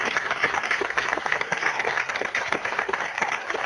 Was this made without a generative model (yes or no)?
no